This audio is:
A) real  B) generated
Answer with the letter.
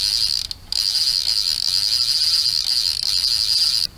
A